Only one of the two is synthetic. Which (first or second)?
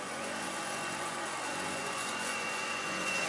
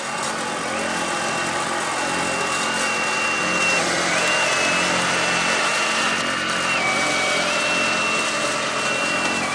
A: first